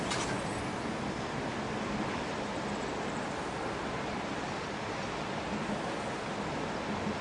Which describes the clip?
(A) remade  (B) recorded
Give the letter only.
B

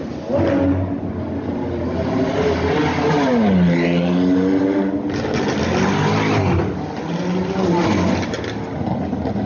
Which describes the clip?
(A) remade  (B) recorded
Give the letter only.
B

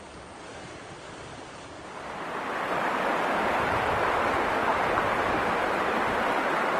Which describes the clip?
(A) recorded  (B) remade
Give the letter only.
A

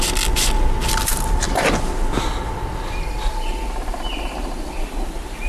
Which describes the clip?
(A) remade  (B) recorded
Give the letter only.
B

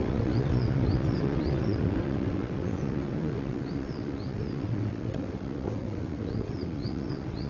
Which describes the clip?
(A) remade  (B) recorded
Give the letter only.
A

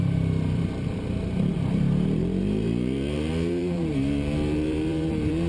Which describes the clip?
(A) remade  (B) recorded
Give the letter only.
A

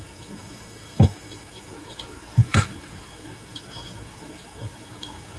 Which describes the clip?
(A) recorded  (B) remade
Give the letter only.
B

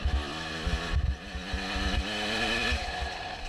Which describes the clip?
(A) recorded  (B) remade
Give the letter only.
A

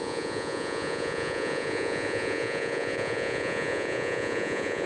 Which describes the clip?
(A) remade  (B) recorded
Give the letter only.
A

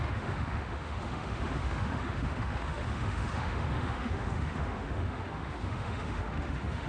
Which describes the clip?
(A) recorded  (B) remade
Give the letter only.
B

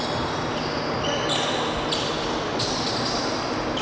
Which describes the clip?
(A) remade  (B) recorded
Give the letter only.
B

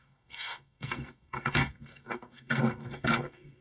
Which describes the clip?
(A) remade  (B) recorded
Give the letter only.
A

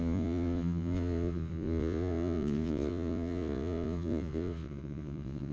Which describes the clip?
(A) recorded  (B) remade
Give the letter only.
B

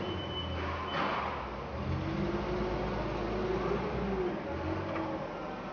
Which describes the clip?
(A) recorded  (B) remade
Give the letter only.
A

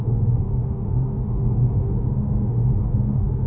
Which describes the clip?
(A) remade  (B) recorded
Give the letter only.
A